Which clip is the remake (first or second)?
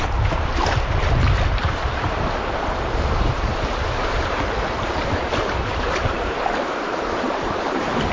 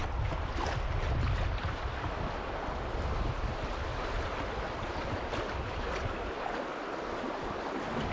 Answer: first